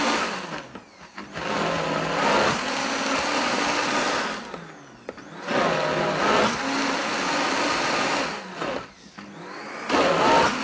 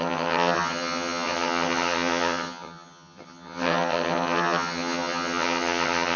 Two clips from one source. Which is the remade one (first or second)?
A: second